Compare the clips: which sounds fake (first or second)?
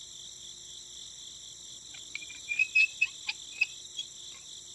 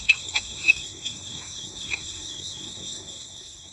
second